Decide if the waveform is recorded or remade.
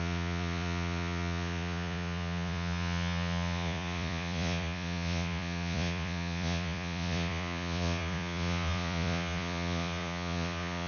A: remade